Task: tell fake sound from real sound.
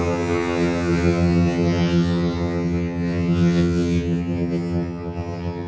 fake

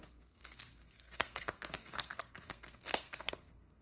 fake